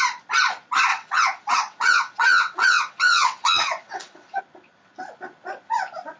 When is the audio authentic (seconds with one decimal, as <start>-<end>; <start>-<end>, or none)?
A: 0.0-0.9; 4.4-6.2